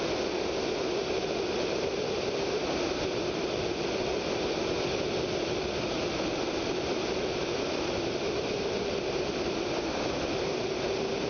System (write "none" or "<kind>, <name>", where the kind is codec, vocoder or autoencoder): none